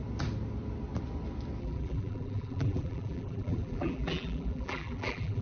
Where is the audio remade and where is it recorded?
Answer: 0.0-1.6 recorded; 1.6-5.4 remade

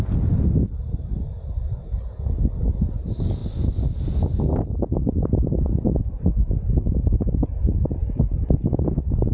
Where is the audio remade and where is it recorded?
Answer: 0.0-9.3 recorded